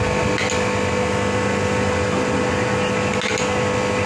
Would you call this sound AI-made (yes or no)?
no